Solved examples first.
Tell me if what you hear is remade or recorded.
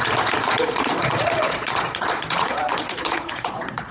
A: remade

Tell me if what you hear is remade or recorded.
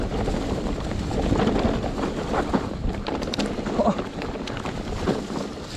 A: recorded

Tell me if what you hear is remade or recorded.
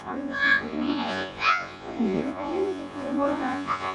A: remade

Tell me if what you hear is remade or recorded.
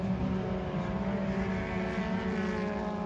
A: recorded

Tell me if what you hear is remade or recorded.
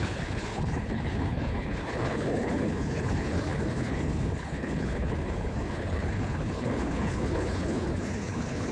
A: remade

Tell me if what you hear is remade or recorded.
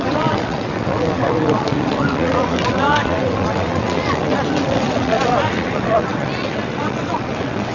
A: remade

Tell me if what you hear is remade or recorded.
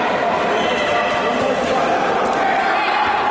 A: recorded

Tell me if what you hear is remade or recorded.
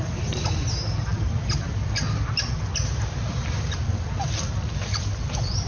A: recorded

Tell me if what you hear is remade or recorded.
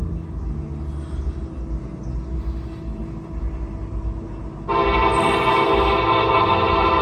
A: recorded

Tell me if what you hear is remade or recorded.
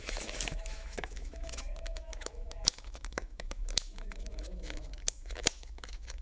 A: remade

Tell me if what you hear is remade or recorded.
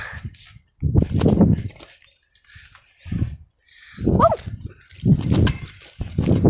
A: recorded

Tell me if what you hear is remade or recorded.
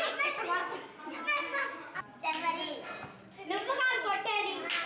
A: recorded